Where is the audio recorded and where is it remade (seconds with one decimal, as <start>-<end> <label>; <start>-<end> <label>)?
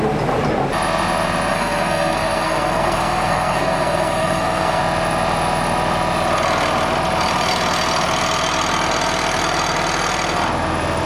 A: 0.0-1.5 recorded; 1.5-4.8 remade; 4.8-11.1 recorded